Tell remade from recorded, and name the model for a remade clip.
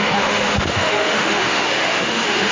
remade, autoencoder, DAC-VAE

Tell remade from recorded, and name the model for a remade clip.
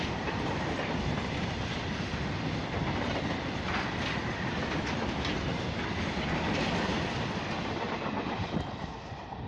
recorded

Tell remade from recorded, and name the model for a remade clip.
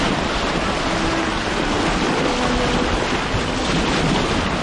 recorded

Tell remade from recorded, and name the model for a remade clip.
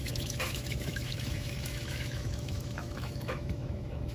remade, autoencoder, DAC-VAE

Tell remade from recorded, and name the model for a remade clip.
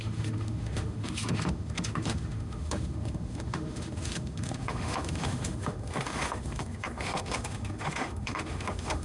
remade, autoencoder, DAC-VAE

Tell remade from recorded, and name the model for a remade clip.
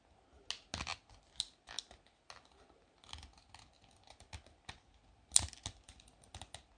recorded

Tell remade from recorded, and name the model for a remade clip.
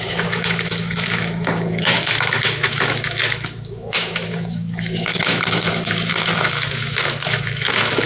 remade, autoencoder, DAC-VAE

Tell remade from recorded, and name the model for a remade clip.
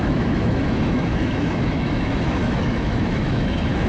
remade, autoencoder, DAC-VAE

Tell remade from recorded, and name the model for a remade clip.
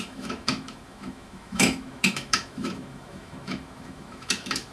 remade, autoencoder, DAC-VAE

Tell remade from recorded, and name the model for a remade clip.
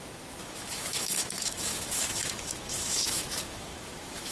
remade, autoencoder, DAC-VAE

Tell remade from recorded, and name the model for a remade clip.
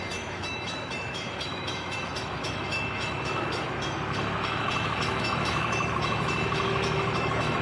remade, autoencoder, DAC-VAE